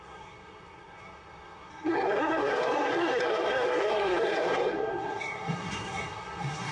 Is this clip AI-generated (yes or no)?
yes